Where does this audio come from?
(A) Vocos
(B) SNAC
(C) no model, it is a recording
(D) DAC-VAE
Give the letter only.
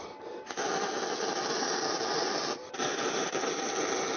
C